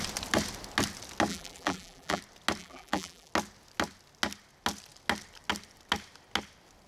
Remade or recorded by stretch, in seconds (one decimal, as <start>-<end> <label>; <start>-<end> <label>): 0.0-1.3 recorded; 1.3-2.2 remade; 2.2-2.6 recorded; 2.6-3.3 remade; 3.3-6.9 recorded